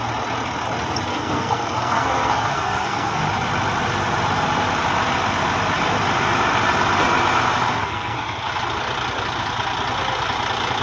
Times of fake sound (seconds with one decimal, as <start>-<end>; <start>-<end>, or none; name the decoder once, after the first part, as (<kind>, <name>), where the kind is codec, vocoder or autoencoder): 1.1-3.2 (codec, SNAC); 7.8-8.5